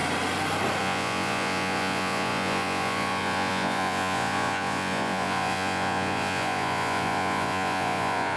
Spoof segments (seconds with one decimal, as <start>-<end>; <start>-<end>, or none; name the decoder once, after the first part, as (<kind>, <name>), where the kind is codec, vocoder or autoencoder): 0.8-8.4 (vocoder, Vocos)